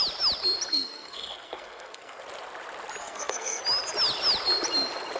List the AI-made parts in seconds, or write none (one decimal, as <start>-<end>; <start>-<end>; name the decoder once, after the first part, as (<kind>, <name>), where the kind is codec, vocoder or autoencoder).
0.7-2.2 (codec, SNAC); 3.0-3.6